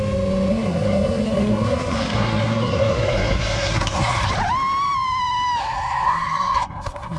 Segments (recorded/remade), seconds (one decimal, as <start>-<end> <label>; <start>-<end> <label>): 0.0-0.5 recorded; 0.5-4.3 remade; 4.3-5.6 recorded; 5.6-7.2 remade

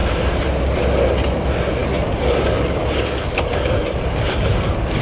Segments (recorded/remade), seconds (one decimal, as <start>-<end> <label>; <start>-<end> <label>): 0.0-1.8 recorded; 1.8-5.0 remade

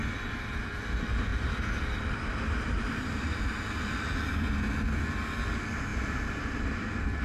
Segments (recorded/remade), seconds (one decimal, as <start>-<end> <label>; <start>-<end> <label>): 0.0-0.7 remade; 0.7-1.3 recorded; 1.3-3.3 remade; 3.3-5.9 recorded; 5.9-7.2 remade

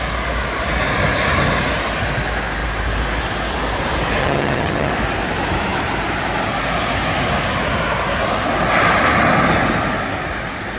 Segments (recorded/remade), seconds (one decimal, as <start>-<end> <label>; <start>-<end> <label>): 0.0-4.2 recorded; 4.2-4.9 remade; 4.9-10.8 recorded

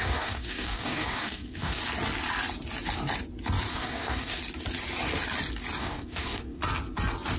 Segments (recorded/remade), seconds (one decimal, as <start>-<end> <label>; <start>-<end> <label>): 0.0-1.8 remade; 1.8-3.7 recorded; 3.7-4.4 remade; 4.4-5.8 recorded; 5.8-6.6 remade; 6.6-7.4 recorded

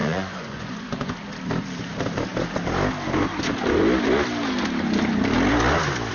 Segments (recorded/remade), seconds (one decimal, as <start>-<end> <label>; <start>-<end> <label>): 0.0-1.1 remade; 1.1-6.1 recorded